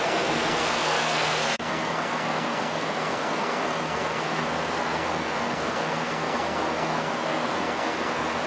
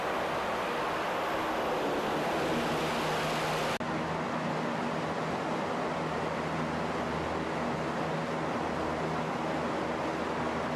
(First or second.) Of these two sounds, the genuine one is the second